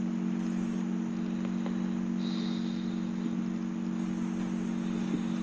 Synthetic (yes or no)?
no